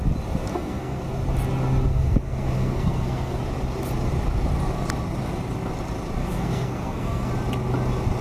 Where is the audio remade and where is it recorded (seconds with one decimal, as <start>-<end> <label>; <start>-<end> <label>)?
0.0-0.5 recorded; 0.5-1.0 remade; 1.0-1.9 recorded; 1.9-3.4 remade; 3.4-6.2 recorded; 6.2-7.3 remade; 7.3-8.2 recorded